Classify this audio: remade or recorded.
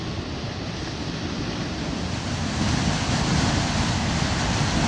recorded